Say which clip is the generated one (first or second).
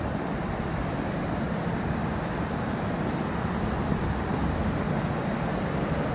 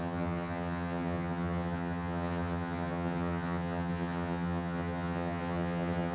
second